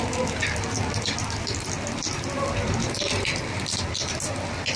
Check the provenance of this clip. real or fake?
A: real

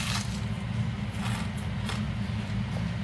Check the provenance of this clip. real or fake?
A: real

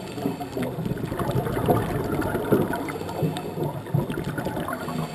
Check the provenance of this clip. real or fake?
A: real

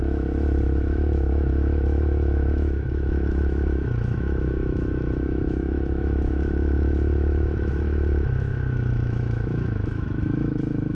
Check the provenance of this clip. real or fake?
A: fake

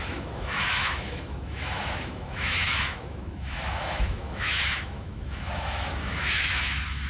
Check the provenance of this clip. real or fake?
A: fake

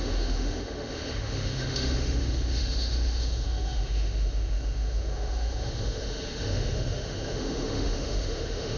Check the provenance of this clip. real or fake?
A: fake